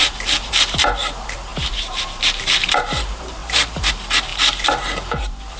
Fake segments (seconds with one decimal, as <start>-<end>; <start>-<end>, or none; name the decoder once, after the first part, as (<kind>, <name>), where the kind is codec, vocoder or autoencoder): 0.0-5.6 (vocoder, BigVGAN v2)